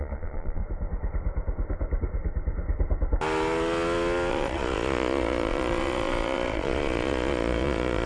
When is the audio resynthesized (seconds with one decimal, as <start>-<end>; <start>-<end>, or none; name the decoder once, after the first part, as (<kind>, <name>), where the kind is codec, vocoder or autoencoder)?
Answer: 0.0-0.6 (vocoder, Vocos); 4.3-8.1